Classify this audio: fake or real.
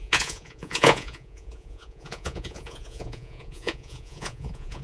fake